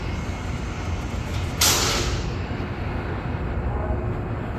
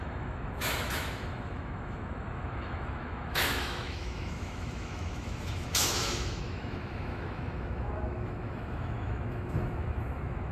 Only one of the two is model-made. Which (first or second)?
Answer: second